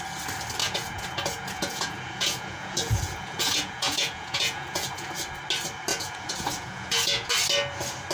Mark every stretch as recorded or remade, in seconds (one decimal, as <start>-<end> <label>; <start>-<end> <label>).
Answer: 0.0-0.6 recorded; 0.6-5.1 remade; 5.1-5.9 recorded; 5.9-7.3 remade; 7.3-8.1 recorded